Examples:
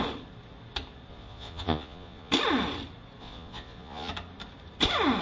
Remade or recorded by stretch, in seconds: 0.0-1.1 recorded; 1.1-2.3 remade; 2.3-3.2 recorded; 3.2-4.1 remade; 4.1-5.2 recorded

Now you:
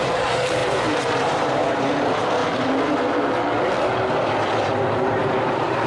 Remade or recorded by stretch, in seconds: 0.0-2.4 remade; 2.4-4.1 recorded; 4.1-5.9 remade

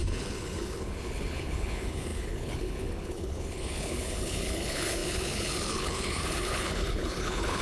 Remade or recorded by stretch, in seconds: 0.0-7.6 remade

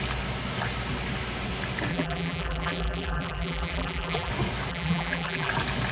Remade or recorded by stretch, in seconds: 0.0-1.9 recorded; 1.9-4.3 remade; 4.3-4.7 recorded; 4.7-5.5 remade; 5.5-5.9 recorded

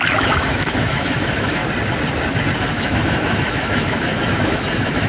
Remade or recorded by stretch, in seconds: 0.0-1.6 remade; 1.6-2.6 recorded; 2.6-5.1 remade

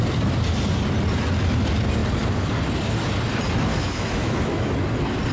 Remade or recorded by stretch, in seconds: 0.0-3.7 recorded; 3.7-4.7 remade; 4.7-5.3 recorded

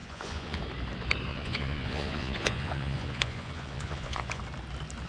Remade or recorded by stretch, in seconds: 0.0-0.6 remade; 0.6-1.3 recorded; 1.3-4.4 remade; 4.4-5.1 recorded